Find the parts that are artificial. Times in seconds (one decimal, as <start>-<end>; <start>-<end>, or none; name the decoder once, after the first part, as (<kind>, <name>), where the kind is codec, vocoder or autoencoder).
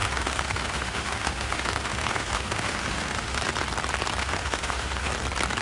0.0-3.4 (autoencoder, DAC-VAE); 4.2-5.1